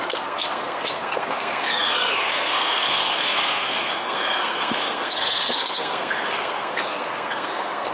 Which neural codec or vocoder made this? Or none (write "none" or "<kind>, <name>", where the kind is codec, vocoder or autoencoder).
codec, SNAC